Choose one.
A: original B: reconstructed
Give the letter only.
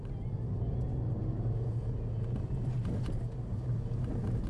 A